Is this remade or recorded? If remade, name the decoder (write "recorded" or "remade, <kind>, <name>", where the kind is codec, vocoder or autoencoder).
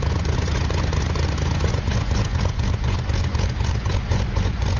remade, vocoder, Vocos